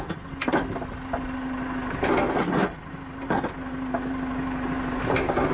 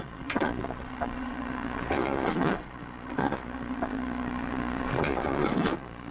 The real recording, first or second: first